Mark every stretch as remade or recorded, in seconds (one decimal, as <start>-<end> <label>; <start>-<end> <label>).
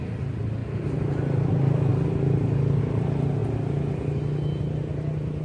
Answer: 0.0-5.4 recorded